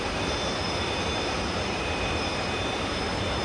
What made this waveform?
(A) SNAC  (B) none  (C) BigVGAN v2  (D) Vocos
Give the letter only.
C